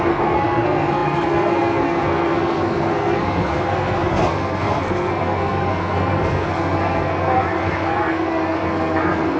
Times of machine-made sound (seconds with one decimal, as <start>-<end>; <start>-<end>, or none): 0.0-9.4